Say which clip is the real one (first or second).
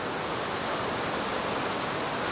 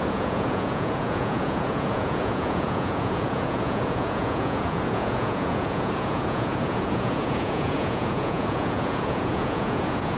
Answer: first